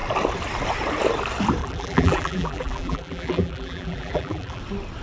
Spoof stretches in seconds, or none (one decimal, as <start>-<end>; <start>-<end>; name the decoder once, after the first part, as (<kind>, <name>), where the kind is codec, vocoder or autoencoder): 1.6-4.6 (vocoder, BigVGAN v2)